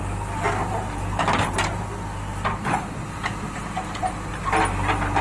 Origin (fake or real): real